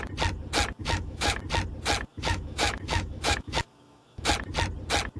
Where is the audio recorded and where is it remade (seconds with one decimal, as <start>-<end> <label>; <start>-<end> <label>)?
0.0-0.8 recorded; 0.8-1.4 remade; 1.4-2.1 recorded; 2.1-4.3 remade; 4.3-5.2 recorded